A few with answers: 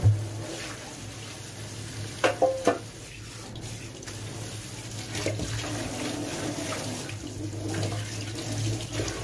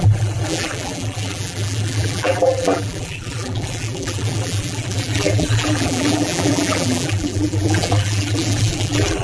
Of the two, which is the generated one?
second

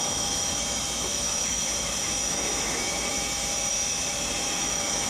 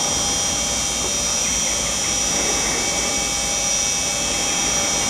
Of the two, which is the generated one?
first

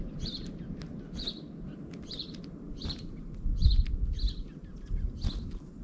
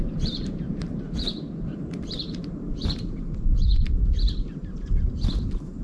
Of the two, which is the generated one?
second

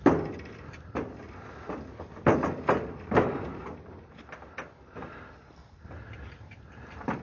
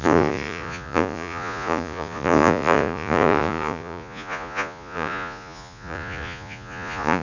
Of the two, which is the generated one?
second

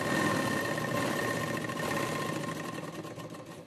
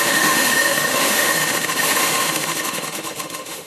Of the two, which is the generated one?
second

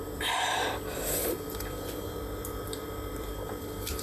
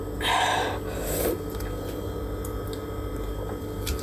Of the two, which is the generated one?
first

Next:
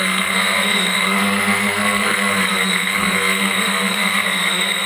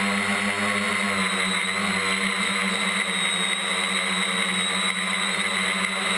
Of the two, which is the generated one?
first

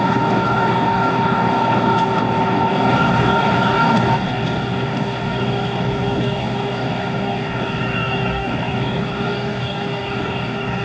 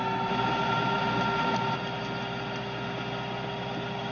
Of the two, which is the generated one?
first